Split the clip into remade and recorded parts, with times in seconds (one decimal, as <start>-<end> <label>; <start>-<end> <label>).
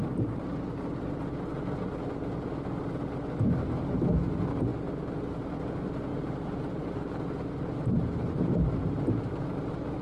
0.0-6.1 recorded; 6.1-10.0 remade